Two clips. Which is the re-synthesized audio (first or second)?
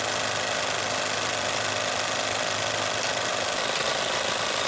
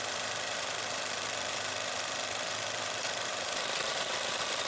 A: second